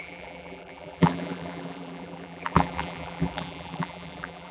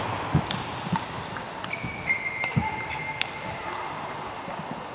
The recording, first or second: second